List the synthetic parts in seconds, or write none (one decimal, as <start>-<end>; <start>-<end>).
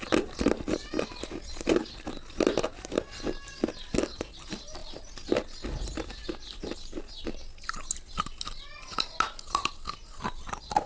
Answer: none